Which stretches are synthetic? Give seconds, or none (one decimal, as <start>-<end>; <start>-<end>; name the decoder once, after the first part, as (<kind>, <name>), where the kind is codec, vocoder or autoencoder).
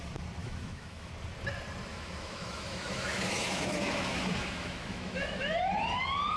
0.4-1.1 (autoencoder, DAC-VAE); 1.9-5.7